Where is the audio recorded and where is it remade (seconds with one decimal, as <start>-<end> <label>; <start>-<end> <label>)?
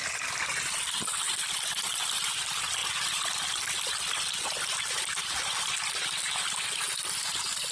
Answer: 0.0-7.7 recorded